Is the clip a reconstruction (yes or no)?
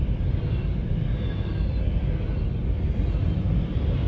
no